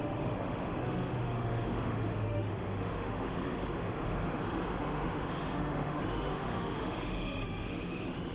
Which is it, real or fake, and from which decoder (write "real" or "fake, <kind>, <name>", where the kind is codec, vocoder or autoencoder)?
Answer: fake, autoencoder, DAC-VAE